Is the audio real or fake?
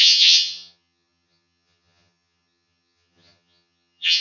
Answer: fake